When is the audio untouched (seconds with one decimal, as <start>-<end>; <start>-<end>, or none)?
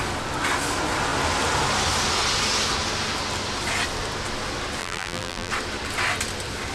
0.0-4.8; 5.5-6.7